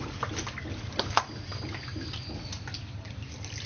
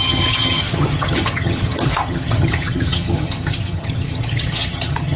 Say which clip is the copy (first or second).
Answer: second